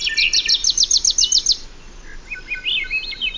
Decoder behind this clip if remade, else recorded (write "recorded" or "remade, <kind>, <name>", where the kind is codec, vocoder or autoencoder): recorded